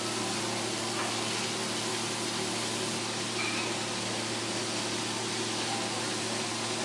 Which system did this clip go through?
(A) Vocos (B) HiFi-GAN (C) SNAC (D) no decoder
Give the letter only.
D